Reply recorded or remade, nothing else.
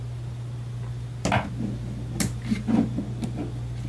recorded